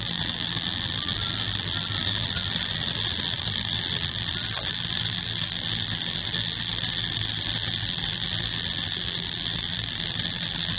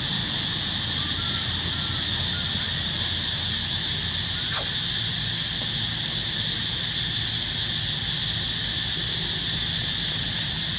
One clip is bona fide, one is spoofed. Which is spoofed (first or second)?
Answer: first